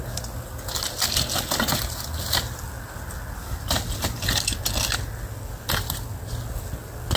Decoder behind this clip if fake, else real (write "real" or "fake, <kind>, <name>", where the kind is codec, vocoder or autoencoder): real